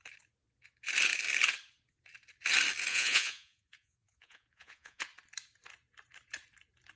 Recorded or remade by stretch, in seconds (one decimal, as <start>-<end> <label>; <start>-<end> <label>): 0.0-2.9 recorded; 2.9-5.0 remade; 5.0-7.0 recorded